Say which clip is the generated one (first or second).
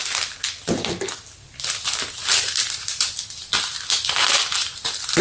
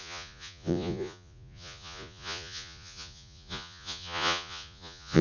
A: second